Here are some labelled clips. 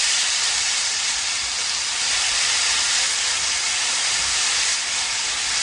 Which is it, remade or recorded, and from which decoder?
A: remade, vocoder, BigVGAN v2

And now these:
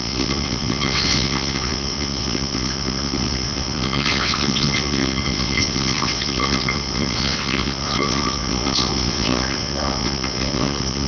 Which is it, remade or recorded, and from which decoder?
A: remade, vocoder, WaveNeXt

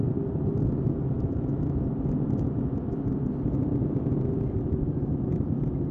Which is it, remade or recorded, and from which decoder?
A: recorded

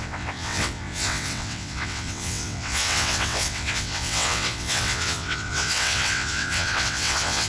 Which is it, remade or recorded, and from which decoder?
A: remade, vocoder, WaveNeXt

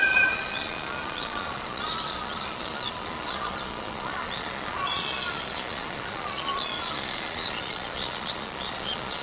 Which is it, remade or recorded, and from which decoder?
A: remade, vocoder, Vocos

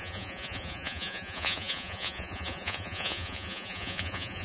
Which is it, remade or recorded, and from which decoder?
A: remade, vocoder, Vocos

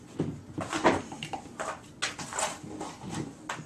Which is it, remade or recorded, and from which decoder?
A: recorded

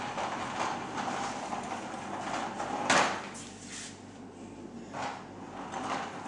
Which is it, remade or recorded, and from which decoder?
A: recorded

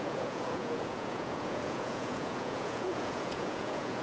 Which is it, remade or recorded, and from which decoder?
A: remade, vocoder, Vocos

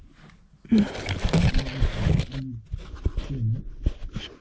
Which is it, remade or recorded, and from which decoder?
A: recorded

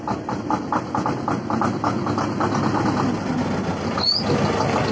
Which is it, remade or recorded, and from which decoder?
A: recorded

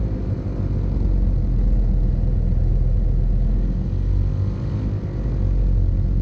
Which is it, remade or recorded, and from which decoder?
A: recorded